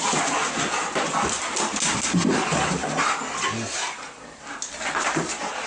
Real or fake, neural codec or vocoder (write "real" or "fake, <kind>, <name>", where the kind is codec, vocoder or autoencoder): real